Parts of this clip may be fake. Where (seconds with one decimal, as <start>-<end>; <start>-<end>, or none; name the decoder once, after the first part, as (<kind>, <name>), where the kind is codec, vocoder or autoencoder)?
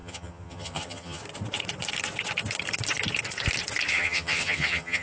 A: 0.0-1.2 (vocoder, HiFi-GAN); 3.9-5.0